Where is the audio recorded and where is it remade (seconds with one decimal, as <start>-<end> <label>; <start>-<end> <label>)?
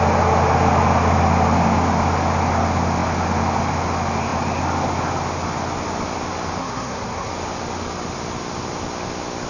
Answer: 0.0-6.6 recorded; 6.6-7.3 remade; 7.3-9.5 recorded